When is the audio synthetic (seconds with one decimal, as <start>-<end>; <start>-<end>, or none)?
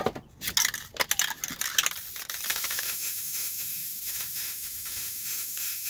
2.5-5.9